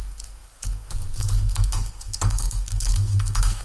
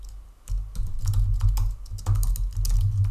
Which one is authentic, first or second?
second